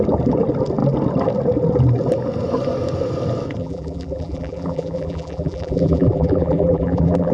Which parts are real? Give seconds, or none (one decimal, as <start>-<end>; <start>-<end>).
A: 0.0-3.6